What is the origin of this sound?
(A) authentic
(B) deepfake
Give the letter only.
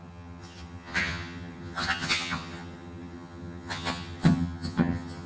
B